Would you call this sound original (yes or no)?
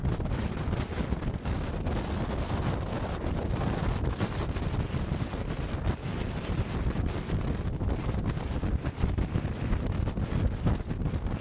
yes